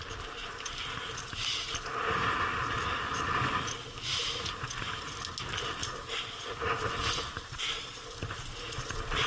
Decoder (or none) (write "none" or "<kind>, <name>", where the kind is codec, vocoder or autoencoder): none